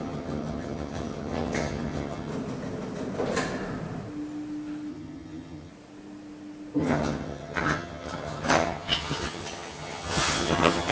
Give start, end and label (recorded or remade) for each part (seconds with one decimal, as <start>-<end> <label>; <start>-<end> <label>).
0.0-2.3 remade; 2.3-4.9 recorded; 4.9-5.7 remade; 5.7-6.8 recorded; 6.8-10.9 remade